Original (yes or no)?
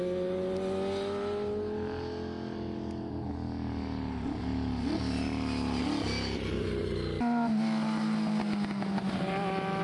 yes